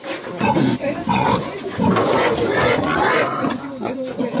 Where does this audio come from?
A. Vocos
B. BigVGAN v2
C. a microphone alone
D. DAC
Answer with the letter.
A